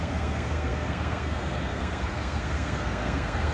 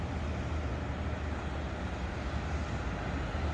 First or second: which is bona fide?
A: second